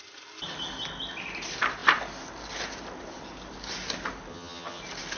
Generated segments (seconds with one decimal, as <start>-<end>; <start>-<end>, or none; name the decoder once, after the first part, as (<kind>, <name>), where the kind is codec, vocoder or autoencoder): 4.3-4.8 (vocoder, HiFi-GAN)